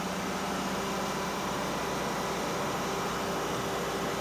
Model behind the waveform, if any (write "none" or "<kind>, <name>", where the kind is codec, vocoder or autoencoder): none